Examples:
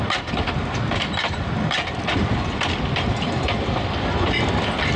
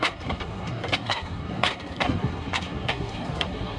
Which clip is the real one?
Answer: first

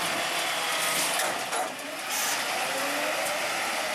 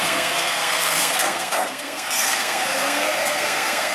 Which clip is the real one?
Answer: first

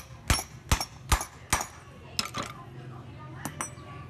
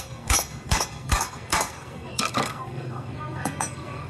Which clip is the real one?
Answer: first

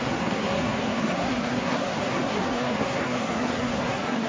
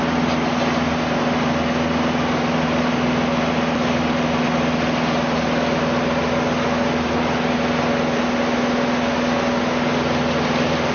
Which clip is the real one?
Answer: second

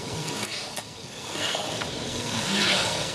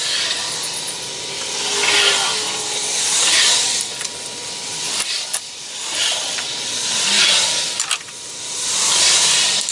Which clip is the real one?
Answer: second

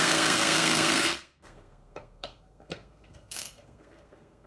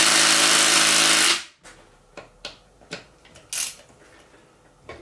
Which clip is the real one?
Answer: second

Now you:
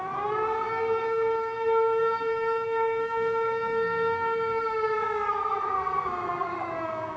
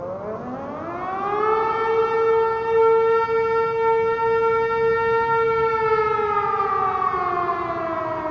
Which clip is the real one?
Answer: second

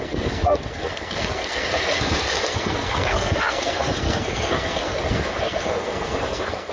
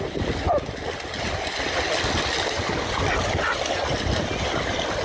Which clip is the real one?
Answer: second